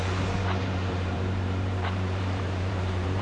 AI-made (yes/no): yes